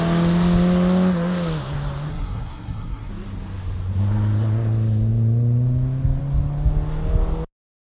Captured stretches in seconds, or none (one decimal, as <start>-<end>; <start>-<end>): 0.0-2.1; 3.1-8.0